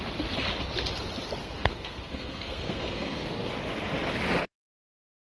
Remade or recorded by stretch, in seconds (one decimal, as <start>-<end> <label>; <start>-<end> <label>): 0.0-1.4 recorded; 1.4-3.5 remade; 3.5-4.4 recorded; 4.4-5.4 remade